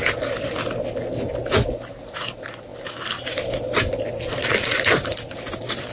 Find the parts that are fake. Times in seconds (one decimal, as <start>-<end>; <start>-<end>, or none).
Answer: none